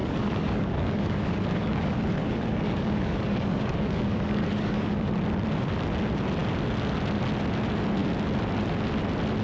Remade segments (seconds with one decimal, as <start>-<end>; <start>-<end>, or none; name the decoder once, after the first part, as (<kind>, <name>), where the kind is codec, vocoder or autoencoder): 0.0-5.1 (codec, DAC)